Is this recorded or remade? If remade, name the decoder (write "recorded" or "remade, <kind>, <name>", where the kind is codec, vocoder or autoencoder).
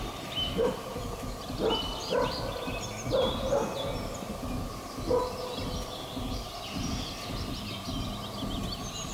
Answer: recorded